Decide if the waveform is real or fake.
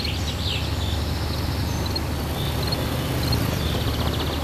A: real